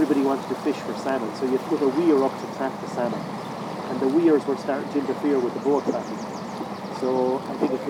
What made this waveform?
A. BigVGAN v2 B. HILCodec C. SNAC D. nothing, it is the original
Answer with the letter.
D